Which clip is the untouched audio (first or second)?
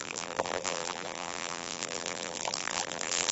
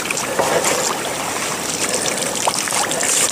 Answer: second